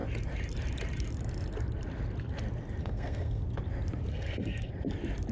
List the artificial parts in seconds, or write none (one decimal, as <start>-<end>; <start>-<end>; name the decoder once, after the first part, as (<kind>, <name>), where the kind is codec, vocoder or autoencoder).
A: 2.8-3.4 (codec, SNAC); 4.1-4.7